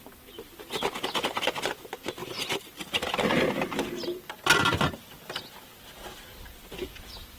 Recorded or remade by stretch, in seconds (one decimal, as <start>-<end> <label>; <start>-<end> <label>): 0.0-2.2 recorded; 2.2-2.7 remade; 2.7-7.4 recorded